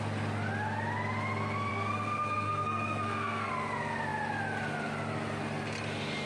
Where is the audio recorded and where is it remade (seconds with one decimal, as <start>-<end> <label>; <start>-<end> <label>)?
0.0-1.7 recorded; 1.7-3.5 remade; 3.5-6.3 recorded